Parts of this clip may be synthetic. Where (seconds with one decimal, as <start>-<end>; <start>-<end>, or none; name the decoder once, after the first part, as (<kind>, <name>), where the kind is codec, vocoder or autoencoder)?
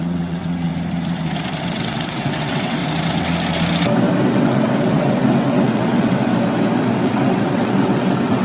0.0-0.7 (vocoder, WaveNeXt); 1.6-2.8; 4.2-6.3; 6.9-8.4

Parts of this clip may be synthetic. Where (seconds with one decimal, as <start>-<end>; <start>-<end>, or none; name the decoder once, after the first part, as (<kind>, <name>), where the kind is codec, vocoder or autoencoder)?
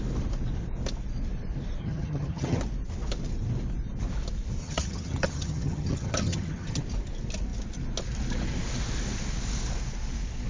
1.8-2.6 (vocoder, HiFi-GAN); 4.6-6.8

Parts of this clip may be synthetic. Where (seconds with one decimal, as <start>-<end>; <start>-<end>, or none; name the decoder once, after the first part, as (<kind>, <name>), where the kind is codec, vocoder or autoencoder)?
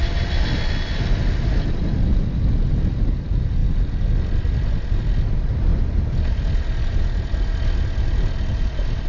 none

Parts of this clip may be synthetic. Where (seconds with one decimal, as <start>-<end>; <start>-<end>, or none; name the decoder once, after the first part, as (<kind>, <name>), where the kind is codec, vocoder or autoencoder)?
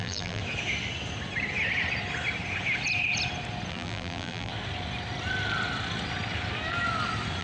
0.0-0.4 (vocoder, BigVGAN v2); 3.7-4.5